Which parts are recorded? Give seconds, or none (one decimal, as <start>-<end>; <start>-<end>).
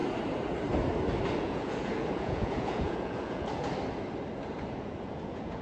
0.0-1.4; 3.7-4.9